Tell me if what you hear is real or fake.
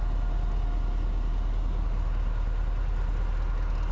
real